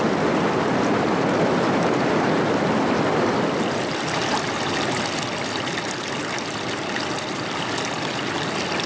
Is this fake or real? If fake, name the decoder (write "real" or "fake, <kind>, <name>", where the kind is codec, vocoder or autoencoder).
real